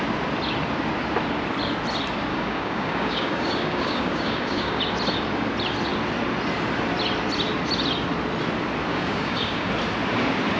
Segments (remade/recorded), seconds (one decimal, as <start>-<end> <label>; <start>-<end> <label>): 0.0-2.3 recorded; 2.3-4.8 remade; 4.8-8.9 recorded; 8.9-9.7 remade; 9.7-10.6 recorded